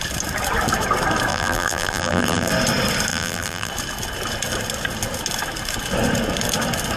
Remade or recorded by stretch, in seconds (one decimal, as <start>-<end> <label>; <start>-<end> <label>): 0.0-1.3 recorded; 1.3-2.5 remade; 2.5-3.1 recorded; 3.1-3.7 remade; 3.7-7.0 recorded